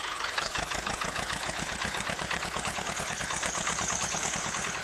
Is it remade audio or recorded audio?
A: remade